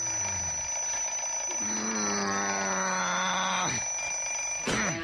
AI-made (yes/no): no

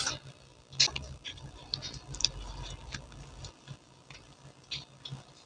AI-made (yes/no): no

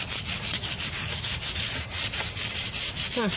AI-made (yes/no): no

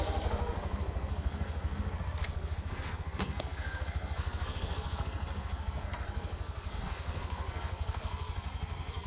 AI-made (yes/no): yes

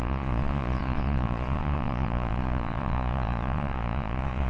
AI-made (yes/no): yes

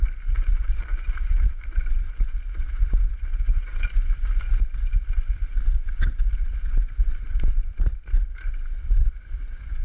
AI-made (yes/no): no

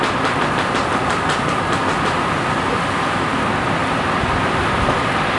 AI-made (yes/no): no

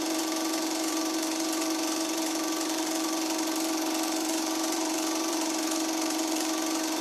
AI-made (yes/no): yes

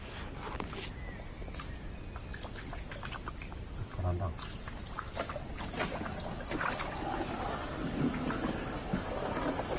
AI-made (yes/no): no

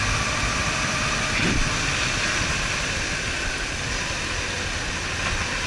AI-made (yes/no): no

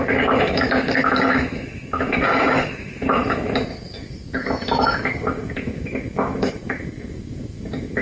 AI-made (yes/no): yes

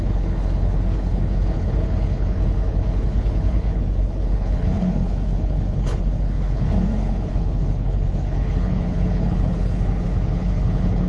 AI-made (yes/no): yes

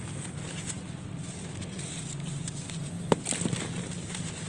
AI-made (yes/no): no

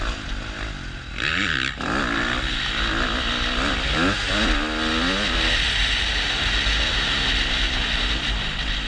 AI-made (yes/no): no